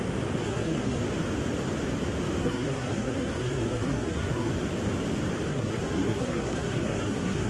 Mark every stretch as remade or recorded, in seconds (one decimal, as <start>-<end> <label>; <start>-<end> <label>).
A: 0.0-0.4 recorded; 0.4-1.0 remade; 1.0-2.4 recorded; 2.4-4.5 remade; 4.5-5.5 recorded; 5.5-7.5 remade

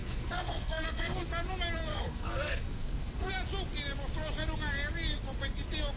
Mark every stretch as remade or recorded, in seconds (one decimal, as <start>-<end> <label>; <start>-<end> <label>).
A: 0.0-1.2 remade; 1.2-1.9 recorded; 1.9-3.3 remade; 3.3-6.0 recorded